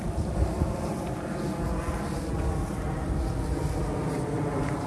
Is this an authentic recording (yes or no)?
yes